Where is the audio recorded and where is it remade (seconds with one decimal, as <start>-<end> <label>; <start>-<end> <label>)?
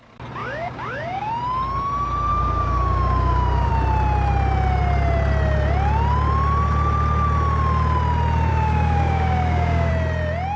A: 0.0-0.4 recorded; 0.4-1.3 remade; 1.3-2.3 recorded; 2.3-3.7 remade; 3.7-8.5 recorded; 8.5-9.9 remade; 9.9-10.6 recorded